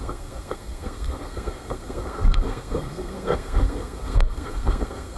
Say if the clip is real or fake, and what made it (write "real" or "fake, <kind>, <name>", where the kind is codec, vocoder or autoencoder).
fake, codec, SNAC